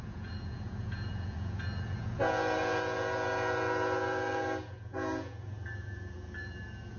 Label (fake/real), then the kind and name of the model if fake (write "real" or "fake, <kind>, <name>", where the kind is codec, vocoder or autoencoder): fake, vocoder, Vocos